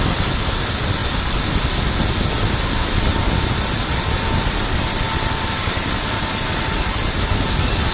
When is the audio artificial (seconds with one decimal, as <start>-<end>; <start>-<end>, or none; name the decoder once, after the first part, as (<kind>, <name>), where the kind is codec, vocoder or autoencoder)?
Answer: none